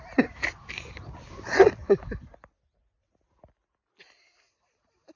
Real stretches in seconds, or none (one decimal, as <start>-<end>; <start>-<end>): 0.0-5.2